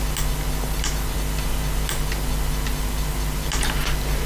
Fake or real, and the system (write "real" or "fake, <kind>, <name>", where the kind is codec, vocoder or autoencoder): real